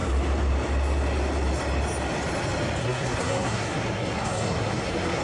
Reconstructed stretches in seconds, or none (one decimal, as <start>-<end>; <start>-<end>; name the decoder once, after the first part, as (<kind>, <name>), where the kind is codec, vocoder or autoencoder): 2.8-5.2 (codec, SNAC)